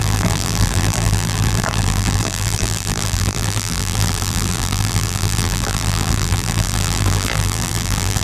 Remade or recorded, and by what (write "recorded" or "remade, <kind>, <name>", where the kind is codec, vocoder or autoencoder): remade, vocoder, BigVGAN v2